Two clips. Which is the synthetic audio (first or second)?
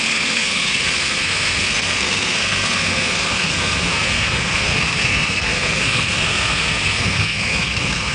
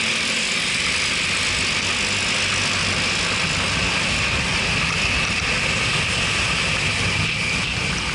first